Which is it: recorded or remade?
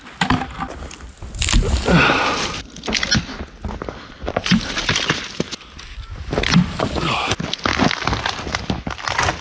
recorded